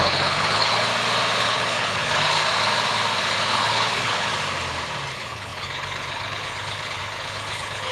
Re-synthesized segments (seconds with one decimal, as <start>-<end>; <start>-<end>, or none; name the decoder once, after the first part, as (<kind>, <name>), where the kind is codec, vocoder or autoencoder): 0.0-0.9 (codec, HILCodec); 1.4-2.4; 3.2-4.3; 5.1-7.9

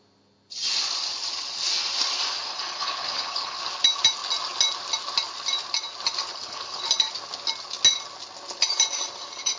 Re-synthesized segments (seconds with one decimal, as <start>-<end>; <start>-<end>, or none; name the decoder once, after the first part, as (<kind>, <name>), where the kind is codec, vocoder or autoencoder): 2.5-3.6 (codec, HILCodec); 6.3-6.8

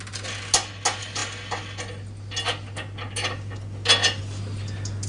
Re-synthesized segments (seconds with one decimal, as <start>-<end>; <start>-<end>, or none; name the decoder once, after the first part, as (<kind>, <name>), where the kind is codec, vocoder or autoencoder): none

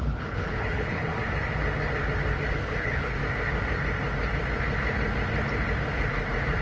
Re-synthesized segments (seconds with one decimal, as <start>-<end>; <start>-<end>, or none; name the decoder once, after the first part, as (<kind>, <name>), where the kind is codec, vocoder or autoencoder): 0.0-1.1 (codec, HILCodec); 2.5-3.2

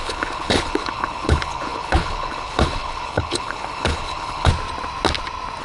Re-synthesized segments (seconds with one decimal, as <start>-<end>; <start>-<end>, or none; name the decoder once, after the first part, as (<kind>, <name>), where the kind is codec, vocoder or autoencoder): 0.0-4.5 (codec, HILCodec)

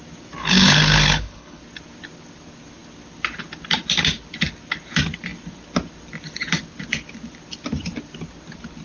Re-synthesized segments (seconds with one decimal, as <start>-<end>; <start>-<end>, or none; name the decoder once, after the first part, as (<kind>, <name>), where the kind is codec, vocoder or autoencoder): 0.4-1.6 (codec, HILCodec)